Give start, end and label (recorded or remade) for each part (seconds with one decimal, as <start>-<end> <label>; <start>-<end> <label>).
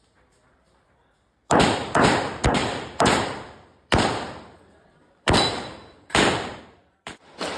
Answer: 0.0-7.6 remade